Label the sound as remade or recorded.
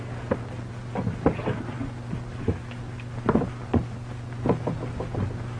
recorded